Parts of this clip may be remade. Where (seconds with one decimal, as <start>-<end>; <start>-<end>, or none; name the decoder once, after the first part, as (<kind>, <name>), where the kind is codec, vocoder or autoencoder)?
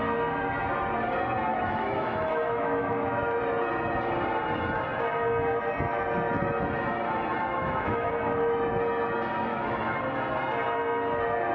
1.5-3.4 (autoencoder, DAC-VAE); 7.4-8.1; 9.5-10.0